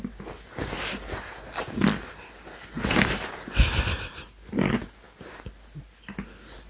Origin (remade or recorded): recorded